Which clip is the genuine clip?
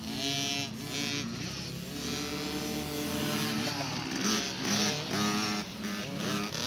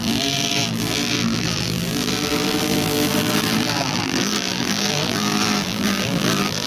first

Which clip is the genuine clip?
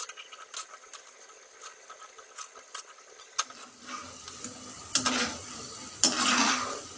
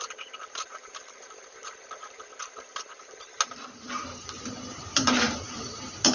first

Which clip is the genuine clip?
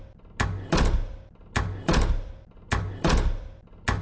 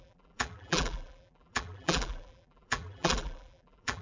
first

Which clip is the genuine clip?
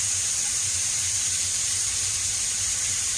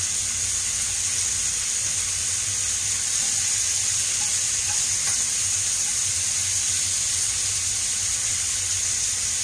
second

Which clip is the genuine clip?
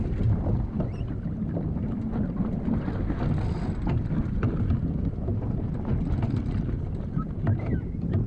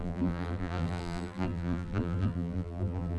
first